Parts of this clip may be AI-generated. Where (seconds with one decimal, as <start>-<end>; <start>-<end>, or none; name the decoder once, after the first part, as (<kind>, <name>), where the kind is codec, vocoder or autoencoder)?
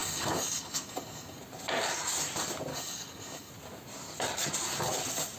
0.0-1.4 (codec, DAC); 2.7-3.5